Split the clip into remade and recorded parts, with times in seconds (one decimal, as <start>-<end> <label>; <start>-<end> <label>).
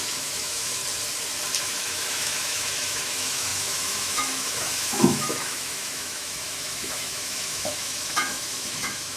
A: 0.0-0.8 remade; 0.8-1.6 recorded; 1.6-9.2 remade